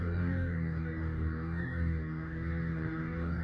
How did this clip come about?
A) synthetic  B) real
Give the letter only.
A